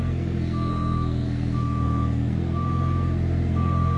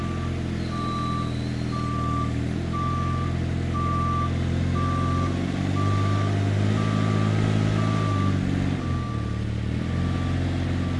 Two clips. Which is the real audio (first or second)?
second